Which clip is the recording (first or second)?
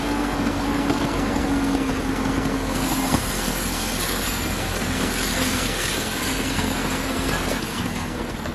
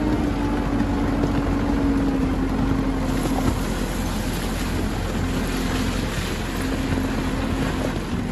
second